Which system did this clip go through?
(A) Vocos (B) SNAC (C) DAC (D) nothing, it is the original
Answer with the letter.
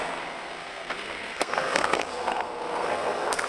B